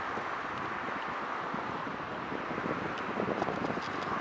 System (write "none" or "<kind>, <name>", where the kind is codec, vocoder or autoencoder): none